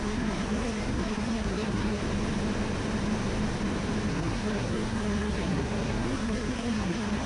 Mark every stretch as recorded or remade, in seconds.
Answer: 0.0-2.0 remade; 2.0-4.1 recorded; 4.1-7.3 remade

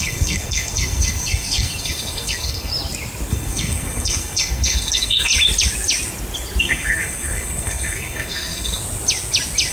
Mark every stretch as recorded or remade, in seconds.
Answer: 0.0-2.7 remade; 2.7-3.3 recorded; 3.3-5.3 remade; 5.3-6.6 recorded; 6.6-8.8 remade; 8.8-9.7 recorded

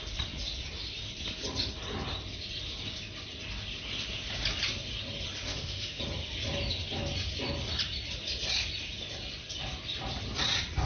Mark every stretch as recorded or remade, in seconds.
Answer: 0.0-5.5 recorded; 5.5-6.0 remade; 6.0-10.8 recorded